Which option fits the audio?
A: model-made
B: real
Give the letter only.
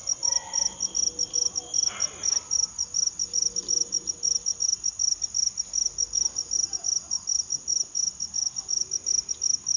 B